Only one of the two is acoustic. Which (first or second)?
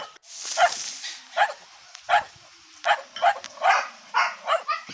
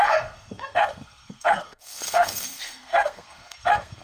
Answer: first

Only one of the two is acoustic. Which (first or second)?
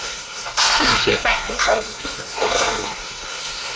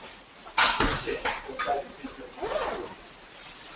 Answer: second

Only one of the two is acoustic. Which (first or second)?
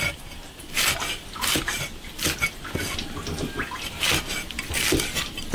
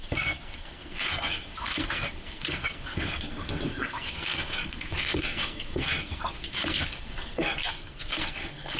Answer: first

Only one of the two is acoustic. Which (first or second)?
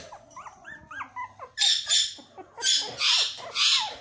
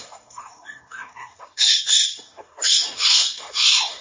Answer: first